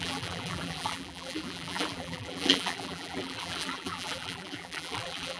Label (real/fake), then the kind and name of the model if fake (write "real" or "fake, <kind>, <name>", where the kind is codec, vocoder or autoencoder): fake, vocoder, BigVGAN v2